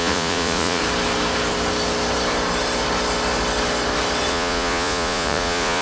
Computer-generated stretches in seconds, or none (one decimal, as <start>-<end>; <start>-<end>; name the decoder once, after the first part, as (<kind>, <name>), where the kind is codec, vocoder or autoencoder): 0.0-0.8 (vocoder, Vocos); 4.3-5.8